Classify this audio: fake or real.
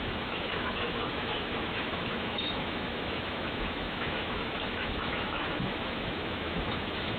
fake